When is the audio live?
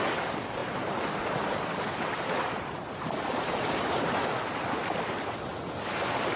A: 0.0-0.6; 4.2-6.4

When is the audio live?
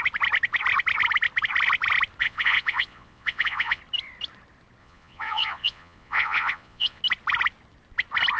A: 0.0-2.2; 3.8-4.8; 7.0-8.4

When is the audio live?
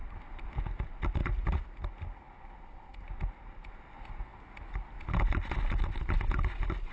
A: 0.0-1.2; 1.8-6.9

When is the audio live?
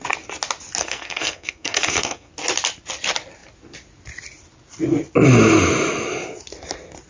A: 0.0-0.8; 2.3-7.1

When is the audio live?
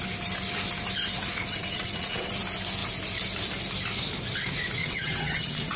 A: 0.0-1.5; 2.3-4.8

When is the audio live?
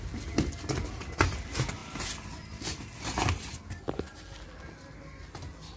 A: 0.0-5.8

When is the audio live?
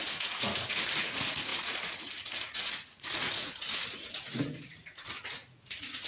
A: none